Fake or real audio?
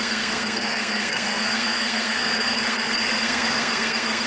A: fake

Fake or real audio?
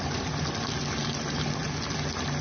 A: real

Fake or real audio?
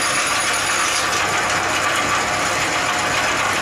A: real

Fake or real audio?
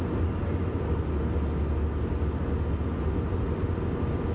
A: real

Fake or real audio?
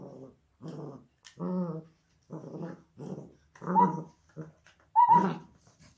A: real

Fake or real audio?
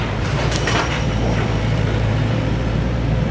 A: fake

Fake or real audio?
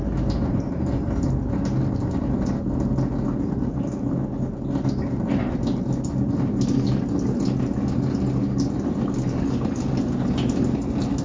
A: real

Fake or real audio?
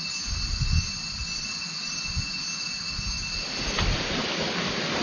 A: real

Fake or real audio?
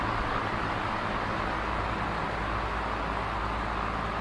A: real